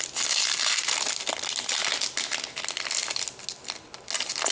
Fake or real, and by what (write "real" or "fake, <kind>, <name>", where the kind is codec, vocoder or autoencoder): real